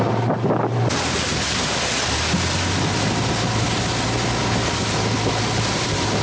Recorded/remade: recorded